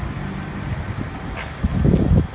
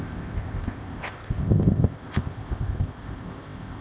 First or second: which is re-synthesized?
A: second